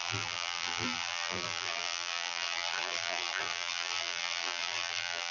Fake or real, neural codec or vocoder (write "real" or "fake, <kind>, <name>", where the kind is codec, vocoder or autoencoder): fake, vocoder, BigVGAN v2